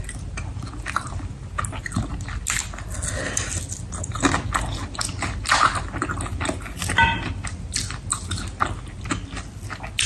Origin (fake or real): real